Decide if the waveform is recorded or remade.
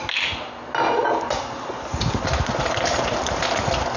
recorded